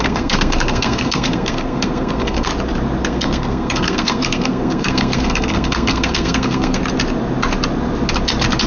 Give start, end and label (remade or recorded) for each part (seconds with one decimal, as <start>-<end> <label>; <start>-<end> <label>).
0.0-2.5 remade; 2.5-3.0 recorded; 3.0-6.8 remade; 6.8-8.7 recorded